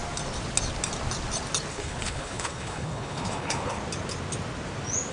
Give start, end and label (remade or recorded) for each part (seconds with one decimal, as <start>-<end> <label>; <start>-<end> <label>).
0.0-1.7 recorded; 1.7-3.8 remade; 3.8-5.1 recorded